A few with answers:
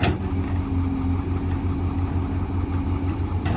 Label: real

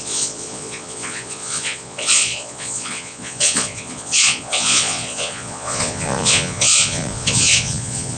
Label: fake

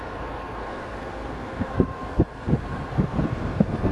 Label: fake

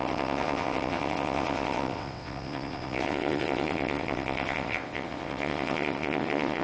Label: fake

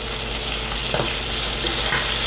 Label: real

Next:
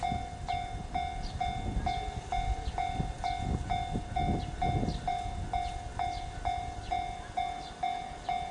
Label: real